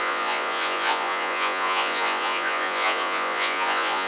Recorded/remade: remade